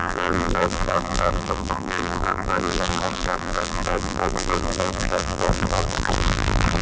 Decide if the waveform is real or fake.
fake